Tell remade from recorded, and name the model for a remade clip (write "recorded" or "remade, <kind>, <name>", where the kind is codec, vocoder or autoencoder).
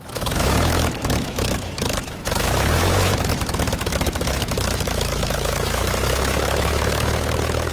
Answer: remade, autoencoder, DAC-VAE